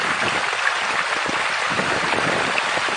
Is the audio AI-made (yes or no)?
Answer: no